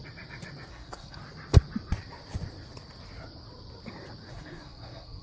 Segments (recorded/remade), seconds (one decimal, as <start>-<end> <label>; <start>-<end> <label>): 0.0-0.7 recorded; 0.7-1.2 remade; 1.2-4.3 recorded; 4.3-5.2 remade